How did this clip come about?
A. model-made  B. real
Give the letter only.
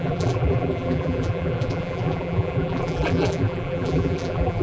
A